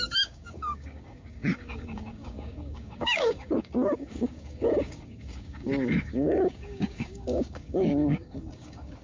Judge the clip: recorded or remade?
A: remade